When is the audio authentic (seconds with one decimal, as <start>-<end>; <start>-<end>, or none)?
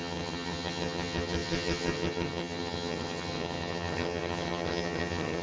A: none